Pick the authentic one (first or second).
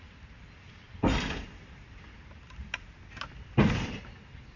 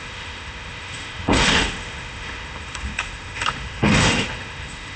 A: first